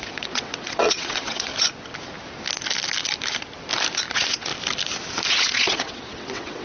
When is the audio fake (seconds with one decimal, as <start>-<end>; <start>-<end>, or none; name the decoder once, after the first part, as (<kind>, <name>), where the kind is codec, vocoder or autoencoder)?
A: 0.0-1.5 (vocoder, WaveNeXt); 4.1-4.5; 5.3-6.6